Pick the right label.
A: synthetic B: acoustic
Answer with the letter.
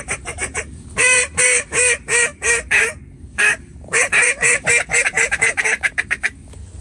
A